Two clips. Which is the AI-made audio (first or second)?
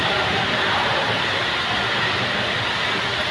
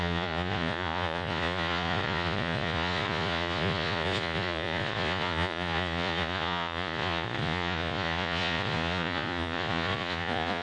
second